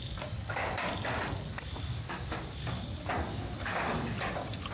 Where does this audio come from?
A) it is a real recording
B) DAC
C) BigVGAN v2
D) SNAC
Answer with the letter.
A